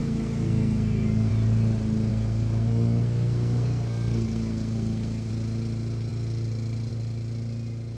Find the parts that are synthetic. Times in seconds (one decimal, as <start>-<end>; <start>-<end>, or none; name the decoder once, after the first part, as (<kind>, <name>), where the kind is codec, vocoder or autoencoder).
0.0-1.3 (codec, SNAC); 2.1-5.3